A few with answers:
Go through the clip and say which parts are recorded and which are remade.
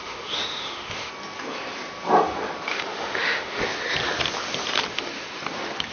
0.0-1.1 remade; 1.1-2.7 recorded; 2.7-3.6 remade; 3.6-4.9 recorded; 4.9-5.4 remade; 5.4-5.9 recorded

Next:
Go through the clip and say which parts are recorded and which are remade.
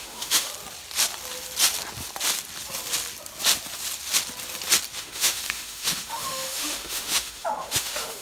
0.0-0.5 remade; 0.5-5.0 recorded; 5.0-8.2 remade